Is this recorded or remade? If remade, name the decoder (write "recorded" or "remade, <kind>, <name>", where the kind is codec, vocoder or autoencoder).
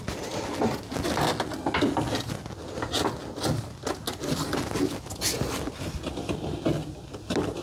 recorded